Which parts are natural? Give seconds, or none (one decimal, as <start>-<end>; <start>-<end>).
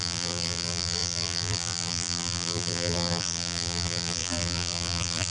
none